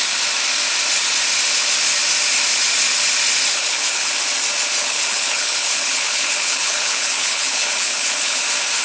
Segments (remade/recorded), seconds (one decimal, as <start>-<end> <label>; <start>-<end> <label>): 0.0-3.5 recorded; 3.5-4.1 remade; 4.1-4.8 recorded; 4.8-8.4 remade; 8.4-8.8 recorded